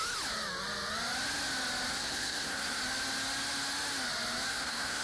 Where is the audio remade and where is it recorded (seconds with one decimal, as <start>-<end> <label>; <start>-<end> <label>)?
0.0-1.9 recorded; 1.9-2.8 remade; 2.8-4.5 recorded; 4.5-5.0 remade